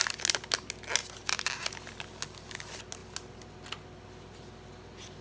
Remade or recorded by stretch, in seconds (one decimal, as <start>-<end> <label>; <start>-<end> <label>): 0.0-5.2 recorded